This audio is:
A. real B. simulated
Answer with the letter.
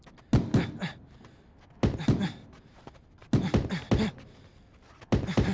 A